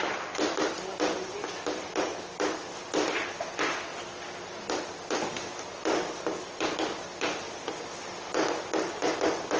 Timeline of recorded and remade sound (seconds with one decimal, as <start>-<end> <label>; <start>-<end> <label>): 0.0-9.6 recorded